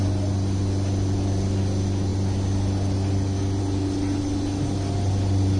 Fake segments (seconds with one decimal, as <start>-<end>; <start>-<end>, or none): none